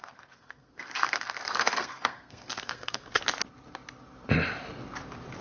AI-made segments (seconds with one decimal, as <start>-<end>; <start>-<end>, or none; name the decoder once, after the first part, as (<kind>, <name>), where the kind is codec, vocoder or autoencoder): 0.0-3.2 (codec, SNAC)